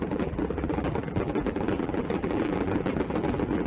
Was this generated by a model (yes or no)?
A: yes